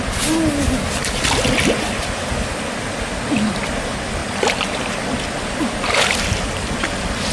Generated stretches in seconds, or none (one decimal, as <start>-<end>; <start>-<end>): none